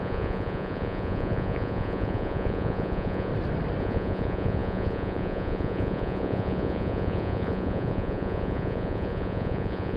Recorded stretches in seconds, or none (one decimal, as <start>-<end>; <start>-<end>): 3.3-3.8